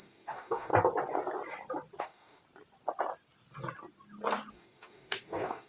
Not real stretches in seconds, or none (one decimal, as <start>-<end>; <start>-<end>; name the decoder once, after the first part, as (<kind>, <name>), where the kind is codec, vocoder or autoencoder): 0.0-0.7 (codec, DAC); 2.0-2.4; 4.5-5.7